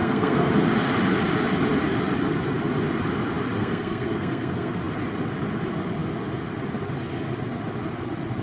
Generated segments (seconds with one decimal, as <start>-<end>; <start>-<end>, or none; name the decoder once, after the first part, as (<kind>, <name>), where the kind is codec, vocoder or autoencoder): 0.0-0.5 (codec, SNAC); 3.6-4.8